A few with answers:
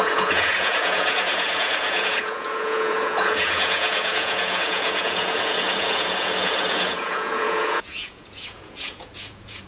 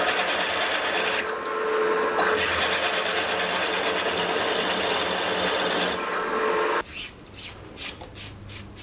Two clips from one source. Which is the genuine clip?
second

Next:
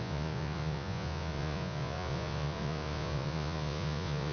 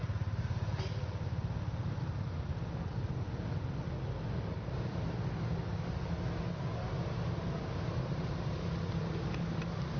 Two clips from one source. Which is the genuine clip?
second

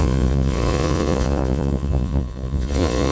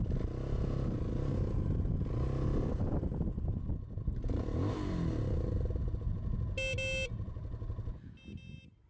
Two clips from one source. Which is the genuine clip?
second